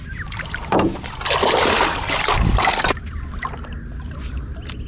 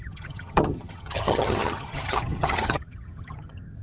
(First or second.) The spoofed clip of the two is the second